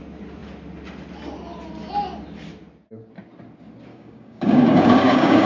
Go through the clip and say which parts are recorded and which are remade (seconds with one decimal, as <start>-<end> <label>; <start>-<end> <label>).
0.0-3.9 recorded; 3.9-5.5 remade